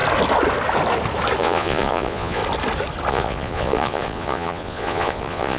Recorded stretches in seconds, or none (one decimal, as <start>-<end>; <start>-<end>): 0.0-1.4; 2.4-3.1